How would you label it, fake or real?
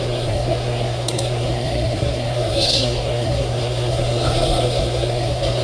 fake